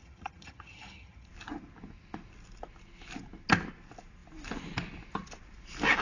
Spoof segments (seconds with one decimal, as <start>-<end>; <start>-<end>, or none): 0.0-1.3

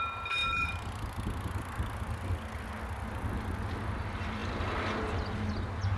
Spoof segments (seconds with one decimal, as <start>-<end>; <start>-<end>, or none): none

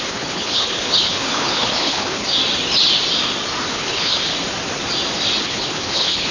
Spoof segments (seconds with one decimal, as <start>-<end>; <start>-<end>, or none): 0.0-2.2; 3.7-4.3; 5.4-6.3

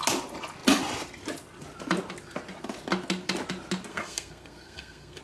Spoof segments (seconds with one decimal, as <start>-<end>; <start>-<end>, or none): 3.9-5.2